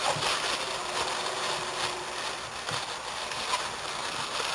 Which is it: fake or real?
real